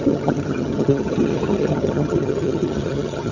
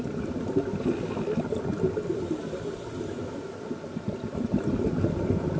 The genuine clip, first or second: second